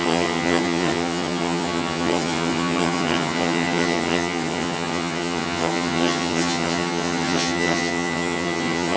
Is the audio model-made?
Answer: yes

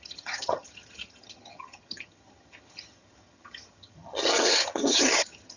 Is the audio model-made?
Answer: yes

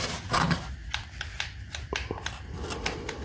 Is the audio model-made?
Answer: no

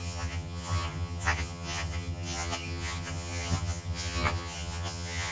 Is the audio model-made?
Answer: yes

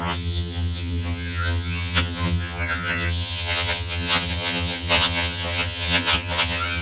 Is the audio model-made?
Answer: yes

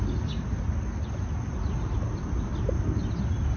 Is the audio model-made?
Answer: no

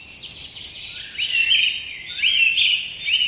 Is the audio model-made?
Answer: no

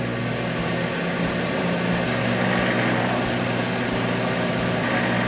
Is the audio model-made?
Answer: no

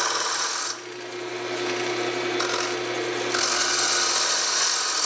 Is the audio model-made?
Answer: no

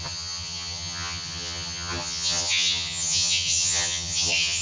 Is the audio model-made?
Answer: yes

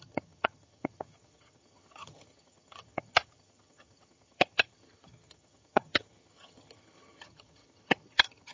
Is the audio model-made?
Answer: yes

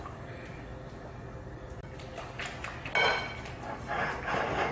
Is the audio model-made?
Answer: no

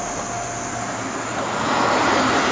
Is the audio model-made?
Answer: no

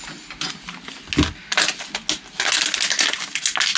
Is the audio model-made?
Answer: no